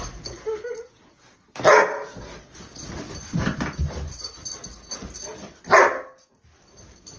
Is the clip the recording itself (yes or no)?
yes